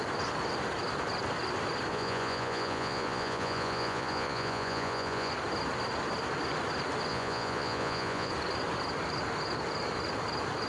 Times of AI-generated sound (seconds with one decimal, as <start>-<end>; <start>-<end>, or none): 1.9-5.3; 7.1-8.3